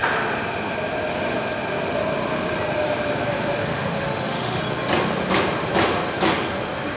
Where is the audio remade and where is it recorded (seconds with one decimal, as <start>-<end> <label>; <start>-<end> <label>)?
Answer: 0.0-3.6 recorded; 3.6-4.6 remade; 4.6-7.0 recorded